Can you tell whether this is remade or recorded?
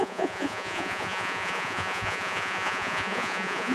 remade